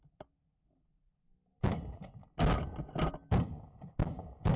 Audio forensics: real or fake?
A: real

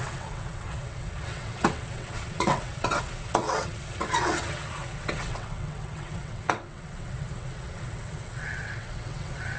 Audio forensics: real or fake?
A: fake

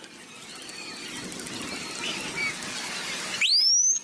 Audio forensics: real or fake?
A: real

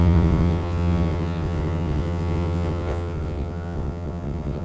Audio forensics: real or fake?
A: fake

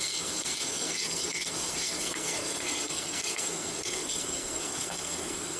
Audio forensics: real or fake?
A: fake